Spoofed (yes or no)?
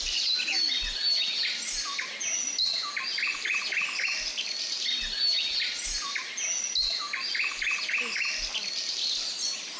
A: no